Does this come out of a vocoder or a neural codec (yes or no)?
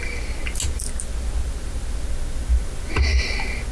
no